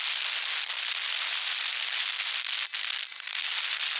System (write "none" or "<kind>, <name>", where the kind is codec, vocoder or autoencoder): none